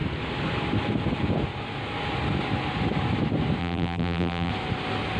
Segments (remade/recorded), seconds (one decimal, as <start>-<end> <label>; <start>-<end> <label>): 0.0-3.6 recorded; 3.6-4.5 remade; 4.5-5.2 recorded